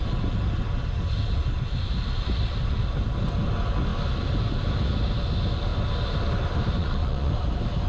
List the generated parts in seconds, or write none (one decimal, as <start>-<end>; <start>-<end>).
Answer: 6.8-7.3